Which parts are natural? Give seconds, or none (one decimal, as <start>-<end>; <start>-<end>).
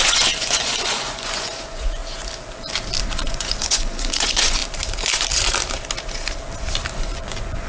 2.0-3.1; 4.6-7.0